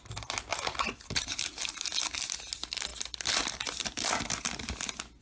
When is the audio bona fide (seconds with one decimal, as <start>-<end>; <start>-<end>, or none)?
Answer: 0.0-0.5; 1.8-2.9; 4.2-5.2